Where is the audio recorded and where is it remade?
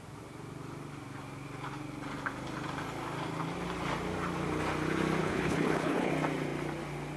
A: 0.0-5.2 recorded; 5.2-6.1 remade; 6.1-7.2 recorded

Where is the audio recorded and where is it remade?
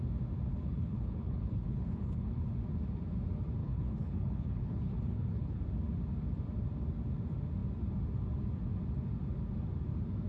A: 0.0-0.5 recorded; 0.5-2.5 remade; 2.5-3.6 recorded; 3.6-5.6 remade; 5.6-10.3 recorded